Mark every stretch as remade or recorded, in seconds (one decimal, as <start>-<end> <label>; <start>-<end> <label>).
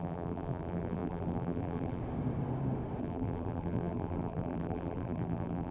0.0-2.0 remade; 2.0-3.0 recorded; 3.0-5.7 remade